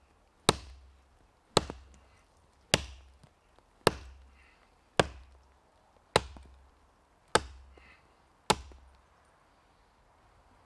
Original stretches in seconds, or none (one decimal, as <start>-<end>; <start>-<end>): 0.0-10.7